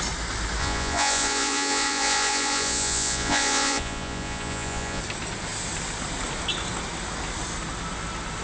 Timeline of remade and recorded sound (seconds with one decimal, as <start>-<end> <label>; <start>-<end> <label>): 0.0-0.6 recorded; 0.6-5.0 remade; 5.0-8.4 recorded